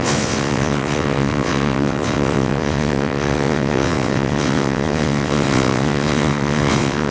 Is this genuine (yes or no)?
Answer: no